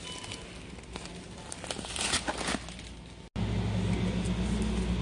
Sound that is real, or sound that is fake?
real